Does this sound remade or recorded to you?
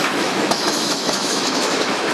remade